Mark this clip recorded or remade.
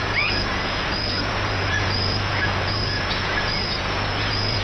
remade